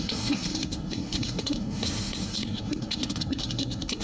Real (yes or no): no